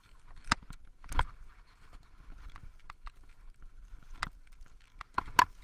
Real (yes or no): yes